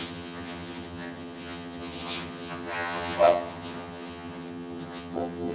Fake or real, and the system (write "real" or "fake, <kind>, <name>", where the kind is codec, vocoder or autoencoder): fake, vocoder, HiFi-GAN